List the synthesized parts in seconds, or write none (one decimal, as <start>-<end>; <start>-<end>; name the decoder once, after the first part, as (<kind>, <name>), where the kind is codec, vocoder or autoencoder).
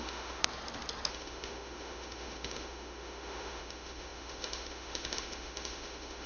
0.0-0.4 (autoencoder, DAC-VAE); 1.1-6.3